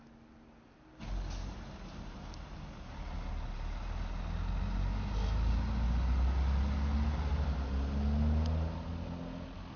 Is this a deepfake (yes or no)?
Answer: no